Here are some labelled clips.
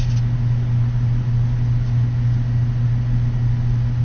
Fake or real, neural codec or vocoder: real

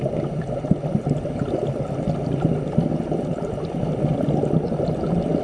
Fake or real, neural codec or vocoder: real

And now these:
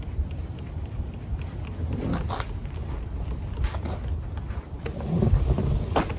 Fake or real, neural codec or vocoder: real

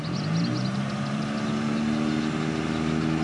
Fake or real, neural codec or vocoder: real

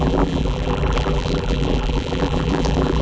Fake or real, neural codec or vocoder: fake, vocoder, BigVGAN v2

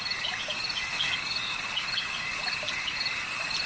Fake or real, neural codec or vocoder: real